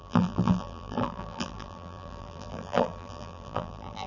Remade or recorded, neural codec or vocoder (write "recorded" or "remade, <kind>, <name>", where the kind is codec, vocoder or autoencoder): remade, vocoder, BigVGAN v2